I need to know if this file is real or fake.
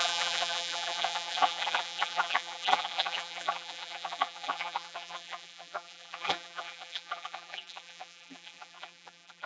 fake